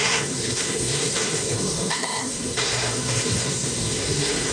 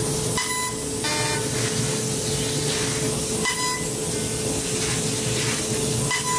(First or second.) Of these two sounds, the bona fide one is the second